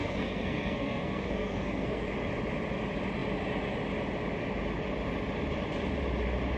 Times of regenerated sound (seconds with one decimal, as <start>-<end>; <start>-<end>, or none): 0.0-2.1